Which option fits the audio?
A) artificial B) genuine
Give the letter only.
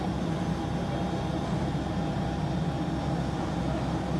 B